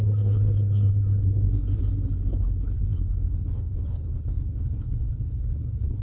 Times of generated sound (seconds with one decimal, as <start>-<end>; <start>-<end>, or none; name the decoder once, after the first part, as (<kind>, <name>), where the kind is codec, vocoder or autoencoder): 0.0-6.0 (codec, HILCodec)